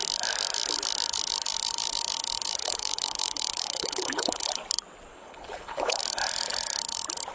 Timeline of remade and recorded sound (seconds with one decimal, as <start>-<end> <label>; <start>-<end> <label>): 0.0-2.6 recorded; 2.6-4.5 remade; 4.5-5.1 recorded; 5.1-6.0 remade; 6.0-7.3 recorded